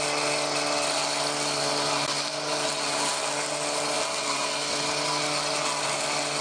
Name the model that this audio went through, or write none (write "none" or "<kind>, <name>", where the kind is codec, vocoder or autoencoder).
none